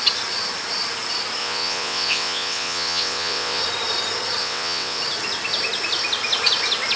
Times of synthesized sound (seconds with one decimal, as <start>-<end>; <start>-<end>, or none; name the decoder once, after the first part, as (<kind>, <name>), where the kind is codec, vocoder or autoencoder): 1.4-3.6 (vocoder, WaveNeXt); 4.4-5.0